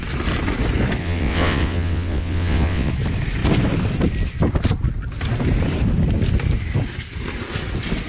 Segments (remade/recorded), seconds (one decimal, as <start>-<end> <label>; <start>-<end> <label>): 0.0-1.0 recorded; 1.0-2.9 remade; 2.9-8.1 recorded